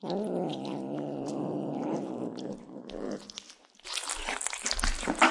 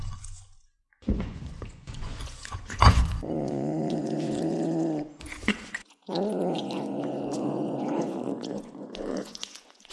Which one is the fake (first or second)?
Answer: second